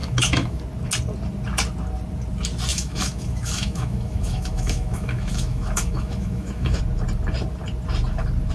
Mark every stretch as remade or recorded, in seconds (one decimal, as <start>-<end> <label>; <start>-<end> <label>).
0.0-0.6 remade; 0.6-2.7 recorded; 2.7-6.8 remade; 6.8-8.5 recorded